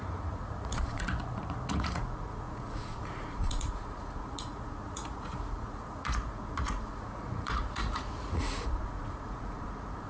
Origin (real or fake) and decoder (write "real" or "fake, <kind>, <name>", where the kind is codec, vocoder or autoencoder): fake, vocoder, Vocos